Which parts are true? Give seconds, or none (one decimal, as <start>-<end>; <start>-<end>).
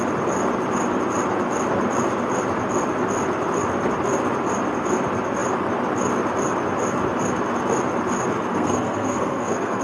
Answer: 0.0-8.5